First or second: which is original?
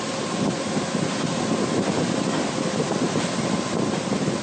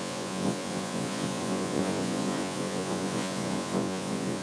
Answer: first